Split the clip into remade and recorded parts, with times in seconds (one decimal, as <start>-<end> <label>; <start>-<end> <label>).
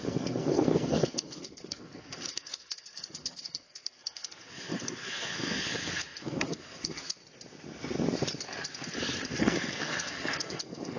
0.0-7.2 remade; 7.2-9.4 recorded; 9.4-11.0 remade